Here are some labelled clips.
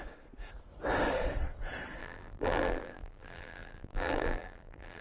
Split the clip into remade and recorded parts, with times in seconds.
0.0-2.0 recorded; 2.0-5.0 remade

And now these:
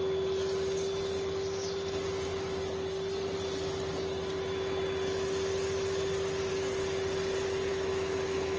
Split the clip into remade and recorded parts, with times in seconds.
0.0-7.7 recorded; 7.7-8.6 remade

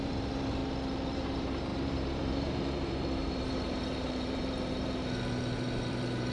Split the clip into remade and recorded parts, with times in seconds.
0.0-0.6 remade; 0.6-1.1 recorded; 1.1-6.3 remade

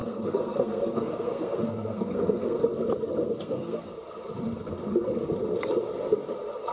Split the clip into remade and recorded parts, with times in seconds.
0.0-2.6 remade; 2.6-3.2 recorded; 3.2-3.9 remade; 3.9-6.7 recorded